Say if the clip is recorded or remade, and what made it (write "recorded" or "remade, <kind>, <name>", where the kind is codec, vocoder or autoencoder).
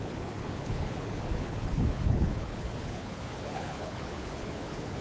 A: remade, codec, HILCodec